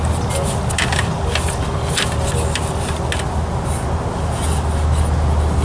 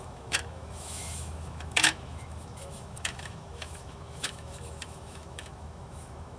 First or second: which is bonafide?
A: first